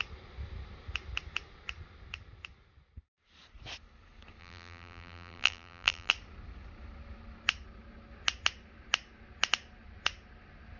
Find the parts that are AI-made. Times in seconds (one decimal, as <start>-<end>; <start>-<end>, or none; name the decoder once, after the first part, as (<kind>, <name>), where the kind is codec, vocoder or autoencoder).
4.4-6.1 (vocoder, BigVGAN v2)